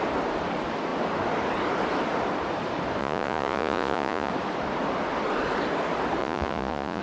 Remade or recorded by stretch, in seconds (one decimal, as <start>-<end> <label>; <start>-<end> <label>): 0.0-3.0 recorded; 3.0-4.3 remade; 4.3-6.2 recorded; 6.2-7.0 remade